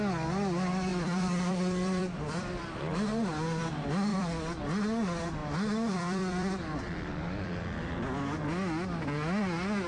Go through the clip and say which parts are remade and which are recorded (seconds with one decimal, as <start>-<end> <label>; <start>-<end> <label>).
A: 0.0-0.9 recorded; 0.9-2.8 remade; 2.8-4.1 recorded; 4.1-4.6 remade; 4.6-5.4 recorded; 5.4-7.9 remade; 7.9-9.9 recorded